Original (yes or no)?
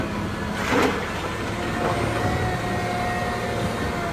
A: yes